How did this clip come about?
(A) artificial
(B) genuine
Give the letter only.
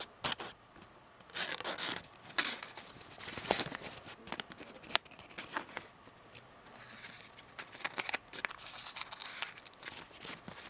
B